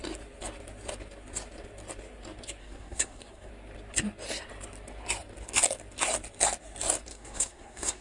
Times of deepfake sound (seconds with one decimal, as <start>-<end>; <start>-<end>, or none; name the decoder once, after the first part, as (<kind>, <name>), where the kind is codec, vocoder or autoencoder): 2.6-3.5 (codec, SNAC); 7.1-8.0